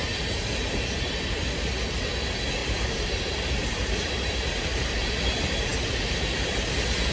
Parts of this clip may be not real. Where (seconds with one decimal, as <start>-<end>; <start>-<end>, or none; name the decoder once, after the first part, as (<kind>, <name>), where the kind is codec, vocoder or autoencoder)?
2.6-5.0 (vocoder, BigVGAN v2)